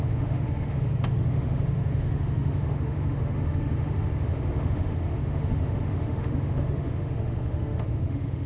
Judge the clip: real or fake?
fake